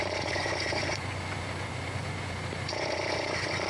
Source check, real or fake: fake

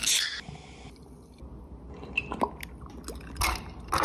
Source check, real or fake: real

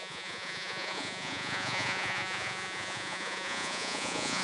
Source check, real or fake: fake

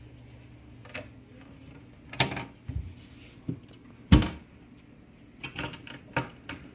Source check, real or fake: real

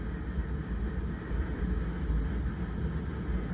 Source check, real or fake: real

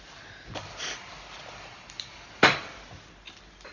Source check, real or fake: real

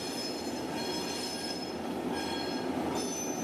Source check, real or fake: real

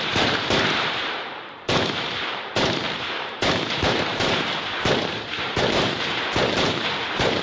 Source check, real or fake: fake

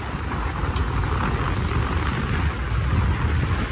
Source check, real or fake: real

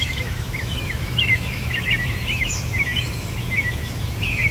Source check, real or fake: fake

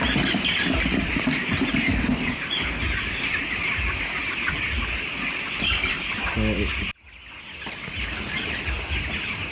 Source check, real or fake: real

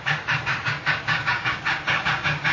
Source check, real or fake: fake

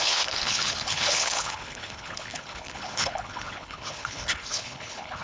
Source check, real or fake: fake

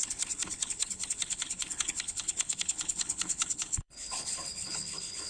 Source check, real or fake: fake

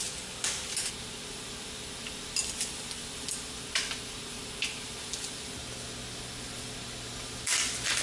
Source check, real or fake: real